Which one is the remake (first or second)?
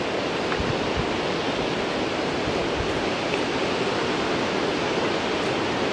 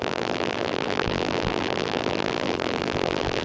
second